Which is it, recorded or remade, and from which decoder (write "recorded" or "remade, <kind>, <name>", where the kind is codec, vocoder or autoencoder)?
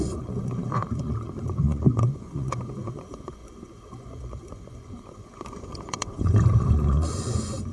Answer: remade, vocoder, Vocos